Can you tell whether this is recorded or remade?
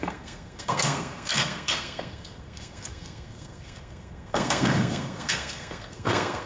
remade